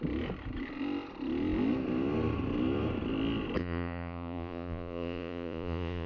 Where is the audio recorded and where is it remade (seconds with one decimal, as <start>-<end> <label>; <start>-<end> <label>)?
0.0-3.6 recorded; 3.6-6.1 remade